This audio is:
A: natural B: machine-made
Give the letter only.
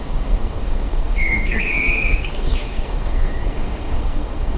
B